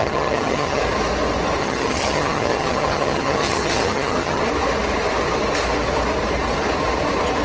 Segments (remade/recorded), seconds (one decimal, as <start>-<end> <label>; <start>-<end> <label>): 0.0-0.8 remade; 0.8-1.6 recorded; 1.6-4.4 remade; 4.4-7.4 recorded